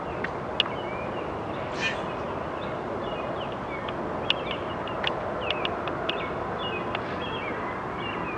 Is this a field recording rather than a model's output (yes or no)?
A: yes